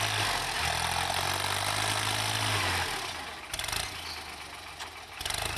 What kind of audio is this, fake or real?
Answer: real